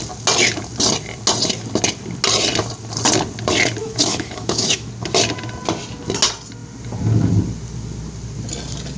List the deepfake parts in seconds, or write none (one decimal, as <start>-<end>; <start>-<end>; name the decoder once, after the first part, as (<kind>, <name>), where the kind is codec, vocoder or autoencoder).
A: 3.8-4.9 (autoencoder, DAC-VAE)